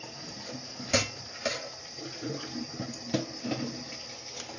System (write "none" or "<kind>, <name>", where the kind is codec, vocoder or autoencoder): none